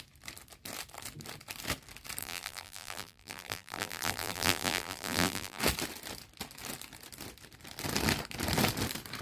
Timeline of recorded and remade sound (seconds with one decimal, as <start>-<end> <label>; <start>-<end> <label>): 0.0-2.2 recorded; 2.2-5.6 remade; 5.6-9.2 recorded

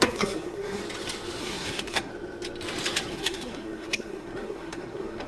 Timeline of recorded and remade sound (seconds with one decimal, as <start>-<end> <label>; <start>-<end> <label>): 0.0-0.8 remade; 0.8-1.4 recorded; 1.4-2.1 remade; 2.1-3.1 recorded; 3.1-5.3 remade

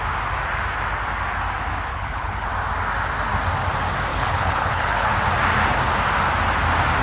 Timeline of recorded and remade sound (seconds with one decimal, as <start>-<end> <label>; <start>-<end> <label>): 0.0-1.9 recorded; 1.9-2.5 remade; 2.5-4.1 recorded; 4.1-5.1 remade; 5.1-7.0 recorded

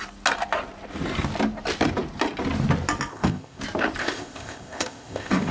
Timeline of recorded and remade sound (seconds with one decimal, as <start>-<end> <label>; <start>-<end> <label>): 0.0-3.1 recorded; 3.1-3.6 remade; 3.6-4.0 recorded; 4.0-5.5 remade

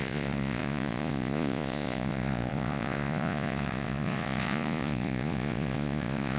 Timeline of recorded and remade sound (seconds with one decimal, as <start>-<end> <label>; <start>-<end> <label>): 0.0-6.4 remade

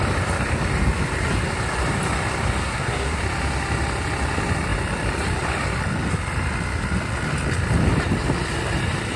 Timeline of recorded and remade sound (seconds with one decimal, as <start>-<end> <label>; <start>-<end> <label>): 0.0-2.6 recorded; 2.6-3.2 remade; 3.2-9.2 recorded

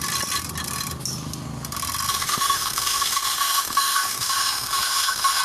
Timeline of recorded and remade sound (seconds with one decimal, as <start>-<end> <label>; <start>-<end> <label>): 0.0-2.1 recorded; 2.1-5.4 remade